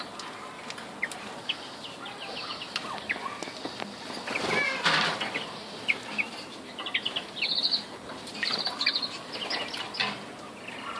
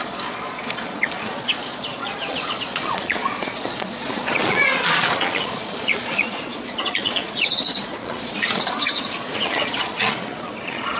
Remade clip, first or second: second